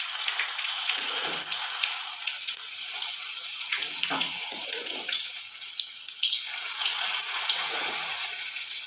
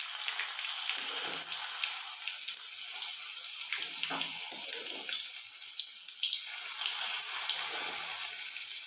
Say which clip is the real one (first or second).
second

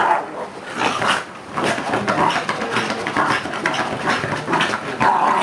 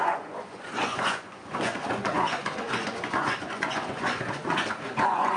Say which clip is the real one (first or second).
first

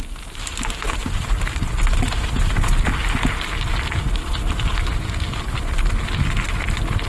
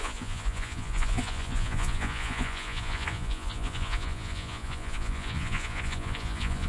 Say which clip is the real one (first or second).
first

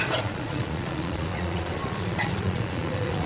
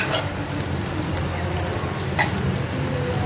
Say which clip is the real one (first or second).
second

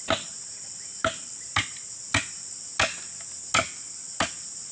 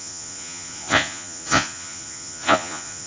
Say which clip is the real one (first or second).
first